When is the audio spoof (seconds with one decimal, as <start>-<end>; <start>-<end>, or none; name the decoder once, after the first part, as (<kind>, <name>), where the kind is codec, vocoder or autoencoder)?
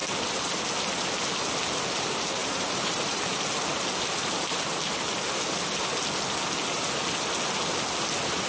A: 2.4-3.2 (vocoder, BigVGAN v2)